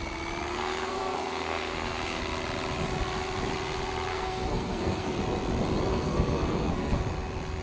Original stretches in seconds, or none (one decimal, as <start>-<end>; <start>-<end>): 0.0-0.5; 2.2-4.1; 5.2-5.9; 7.0-7.6